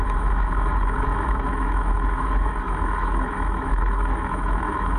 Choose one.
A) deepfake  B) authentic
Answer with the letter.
A